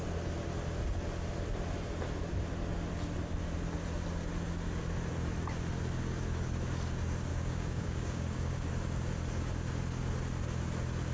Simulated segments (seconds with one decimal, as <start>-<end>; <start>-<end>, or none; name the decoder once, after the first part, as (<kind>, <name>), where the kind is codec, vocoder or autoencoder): 7.3-8.7 (codec, DAC)